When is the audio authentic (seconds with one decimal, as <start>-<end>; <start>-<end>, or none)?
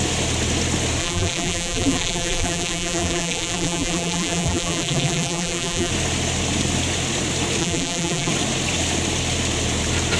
0.0-1.0; 5.9-7.6; 8.3-10.2